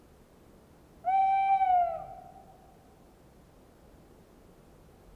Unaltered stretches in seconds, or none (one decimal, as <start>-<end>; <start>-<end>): 0.0-5.2